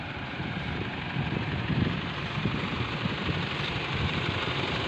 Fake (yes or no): yes